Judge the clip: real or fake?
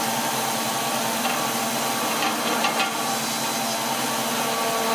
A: real